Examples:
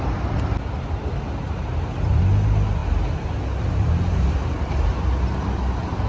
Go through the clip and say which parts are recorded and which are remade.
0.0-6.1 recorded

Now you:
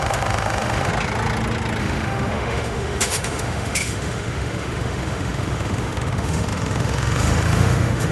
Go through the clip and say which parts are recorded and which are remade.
0.0-0.9 remade; 0.9-1.8 recorded; 1.8-8.1 remade

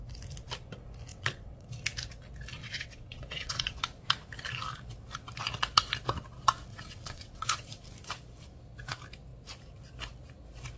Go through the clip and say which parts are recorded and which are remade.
0.0-1.1 recorded; 1.1-1.7 remade; 1.7-2.6 recorded; 2.6-3.8 remade; 3.8-6.7 recorded; 6.7-7.8 remade; 7.8-10.8 recorded

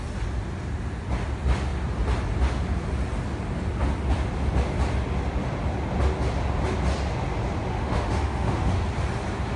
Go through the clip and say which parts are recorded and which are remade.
0.0-7.7 recorded; 7.7-8.7 remade; 8.7-9.6 recorded

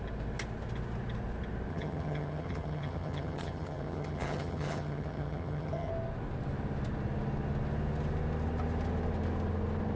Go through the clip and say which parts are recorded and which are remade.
0.0-1.7 recorded; 1.7-5.9 remade; 5.9-10.0 recorded

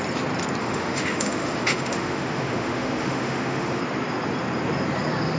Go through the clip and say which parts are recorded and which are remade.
0.0-0.6 recorded; 0.6-3.8 remade; 3.8-5.4 recorded

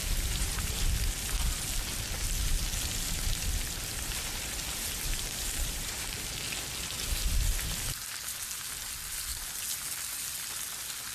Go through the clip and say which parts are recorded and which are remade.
0.0-0.8 remade; 0.8-3.9 recorded; 3.9-6.2 remade; 6.2-11.1 recorded

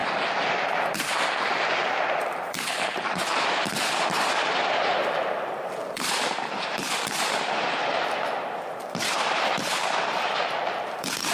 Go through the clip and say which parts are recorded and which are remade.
0.0-0.5 recorded; 0.5-11.3 remade